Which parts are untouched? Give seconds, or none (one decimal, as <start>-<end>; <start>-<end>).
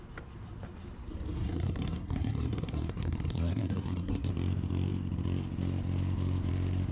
0.0-1.3; 4.3-6.9